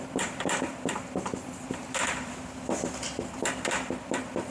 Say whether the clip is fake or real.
fake